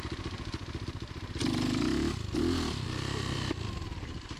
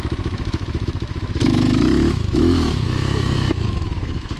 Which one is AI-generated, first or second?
second